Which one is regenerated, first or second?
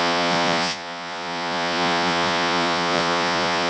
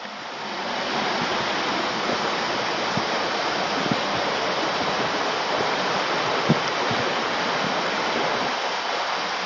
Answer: first